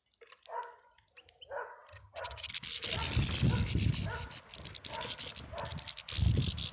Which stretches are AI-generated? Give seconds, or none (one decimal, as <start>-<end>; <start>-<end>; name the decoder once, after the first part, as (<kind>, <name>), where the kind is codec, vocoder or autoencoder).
1.9-2.5 (vocoder, HiFi-GAN)